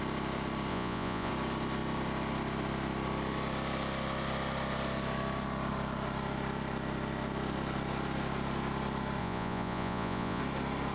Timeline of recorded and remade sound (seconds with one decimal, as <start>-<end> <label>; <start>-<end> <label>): 0.0-0.7 recorded; 0.7-1.3 remade; 1.3-9.2 recorded; 9.2-10.4 remade; 10.4-10.9 recorded